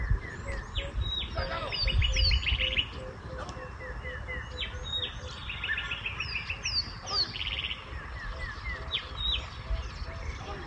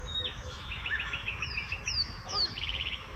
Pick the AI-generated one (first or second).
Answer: second